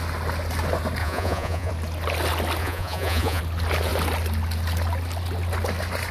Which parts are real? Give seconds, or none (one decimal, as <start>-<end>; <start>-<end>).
0.0-1.0; 1.7-2.6; 3.4-6.1